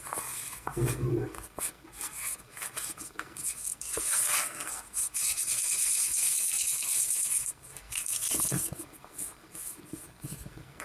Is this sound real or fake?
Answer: fake